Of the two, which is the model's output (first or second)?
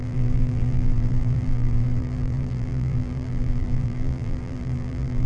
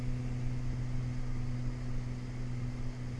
first